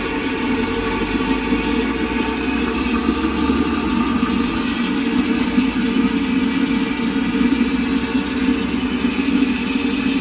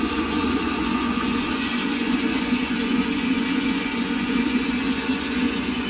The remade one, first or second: second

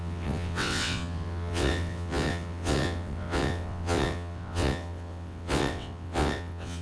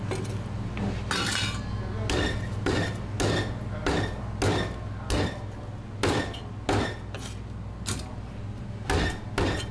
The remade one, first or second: first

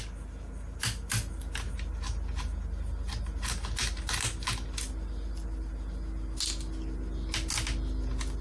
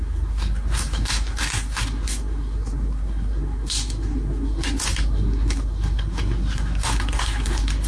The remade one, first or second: second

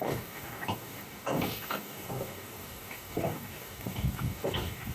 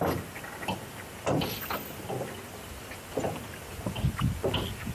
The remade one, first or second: first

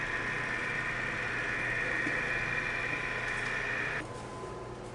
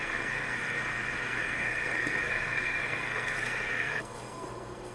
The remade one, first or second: second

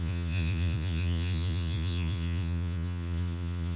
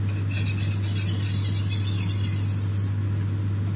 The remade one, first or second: first